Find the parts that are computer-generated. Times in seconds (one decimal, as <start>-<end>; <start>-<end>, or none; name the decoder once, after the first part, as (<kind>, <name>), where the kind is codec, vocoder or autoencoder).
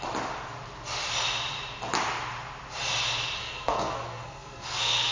3.4-5.1 (codec, SNAC)